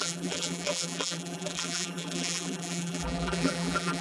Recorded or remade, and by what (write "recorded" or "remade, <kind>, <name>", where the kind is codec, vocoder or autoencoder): remade, vocoder, BigVGAN v2